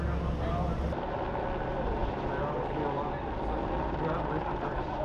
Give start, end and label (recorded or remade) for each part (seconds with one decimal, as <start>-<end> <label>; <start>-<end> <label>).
0.0-5.0 recorded